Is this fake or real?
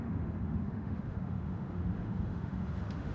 fake